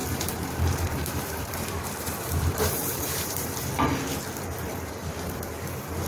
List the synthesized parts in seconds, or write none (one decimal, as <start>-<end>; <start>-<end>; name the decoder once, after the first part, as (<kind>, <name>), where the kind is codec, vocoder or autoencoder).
0.0-3.7 (vocoder, BigVGAN v2); 5.0-5.5